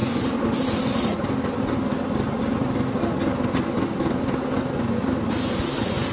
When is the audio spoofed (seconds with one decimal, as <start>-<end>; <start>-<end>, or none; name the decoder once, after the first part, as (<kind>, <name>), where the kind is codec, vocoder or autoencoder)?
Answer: none

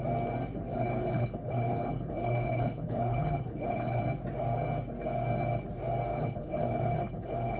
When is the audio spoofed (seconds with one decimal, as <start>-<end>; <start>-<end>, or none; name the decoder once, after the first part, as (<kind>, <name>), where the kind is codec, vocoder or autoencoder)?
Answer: 0.7-4.0 (codec, HILCodec); 6.1-7.6

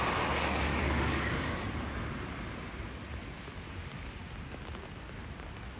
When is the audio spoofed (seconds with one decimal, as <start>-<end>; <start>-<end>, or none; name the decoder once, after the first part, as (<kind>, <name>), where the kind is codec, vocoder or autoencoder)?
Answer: 0.7-1.9 (codec, DAC)

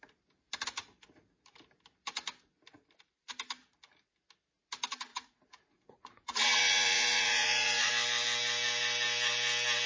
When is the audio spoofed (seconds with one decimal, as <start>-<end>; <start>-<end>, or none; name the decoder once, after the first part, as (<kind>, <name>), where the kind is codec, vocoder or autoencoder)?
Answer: 5.1-7.9 (vocoder, Vocos)

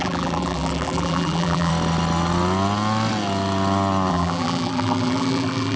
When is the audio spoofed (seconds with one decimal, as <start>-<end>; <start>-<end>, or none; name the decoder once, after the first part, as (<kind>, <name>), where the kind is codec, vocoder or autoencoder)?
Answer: 0.0-1.7 (vocoder, BigVGAN v2); 4.1-5.8

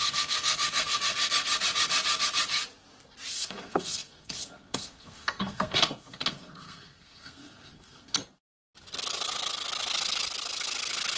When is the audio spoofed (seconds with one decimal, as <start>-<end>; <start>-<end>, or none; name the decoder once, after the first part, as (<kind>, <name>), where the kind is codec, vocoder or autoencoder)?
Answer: 0.0-1.5 (codec, SNAC); 3.3-8.2

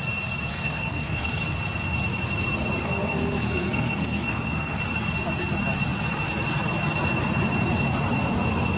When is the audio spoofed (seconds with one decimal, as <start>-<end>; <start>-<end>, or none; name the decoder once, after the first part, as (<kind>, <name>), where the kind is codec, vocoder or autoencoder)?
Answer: 0.5-1.3 (codec, SNAC); 2.8-4.8

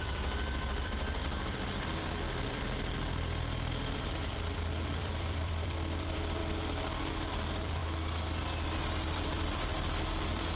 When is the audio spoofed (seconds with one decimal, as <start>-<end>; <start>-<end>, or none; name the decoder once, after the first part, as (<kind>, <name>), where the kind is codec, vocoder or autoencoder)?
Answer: 0.0-6.4 (vocoder, BigVGAN v2); 7.3-7.8; 8.9-10.6